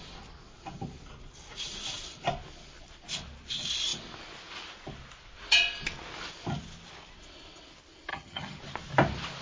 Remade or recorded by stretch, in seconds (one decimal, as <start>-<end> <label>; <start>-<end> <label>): 0.0-8.1 recorded; 8.1-8.6 remade; 8.6-9.4 recorded